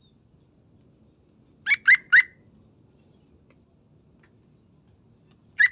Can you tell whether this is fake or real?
real